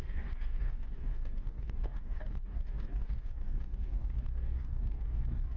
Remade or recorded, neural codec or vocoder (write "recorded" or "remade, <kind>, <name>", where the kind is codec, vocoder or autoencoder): remade, codec, DAC